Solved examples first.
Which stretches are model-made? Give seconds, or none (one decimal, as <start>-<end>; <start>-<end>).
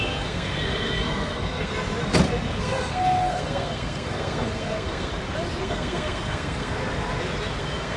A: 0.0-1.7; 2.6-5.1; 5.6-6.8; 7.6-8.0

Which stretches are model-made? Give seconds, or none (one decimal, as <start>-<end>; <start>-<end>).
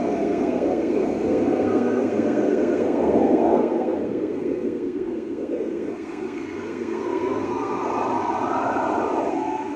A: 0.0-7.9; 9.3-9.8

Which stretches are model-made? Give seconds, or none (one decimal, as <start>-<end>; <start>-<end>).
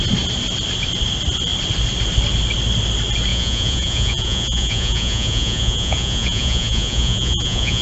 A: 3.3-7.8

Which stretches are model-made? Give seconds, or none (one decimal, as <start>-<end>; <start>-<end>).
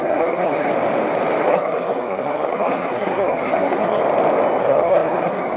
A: 0.0-0.7; 1.4-4.0; 4.6-5.6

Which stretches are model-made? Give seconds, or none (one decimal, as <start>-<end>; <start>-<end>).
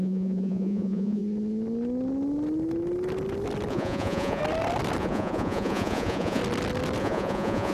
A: 0.0-1.2; 3.7-4.4; 5.0-6.4; 7.0-7.7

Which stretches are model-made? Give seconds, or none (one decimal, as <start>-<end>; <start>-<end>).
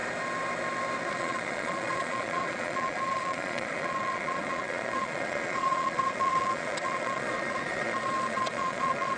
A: 1.1-9.2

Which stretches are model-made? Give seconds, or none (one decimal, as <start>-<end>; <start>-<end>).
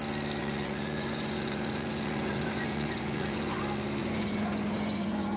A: 0.4-3.6; 4.0-5.4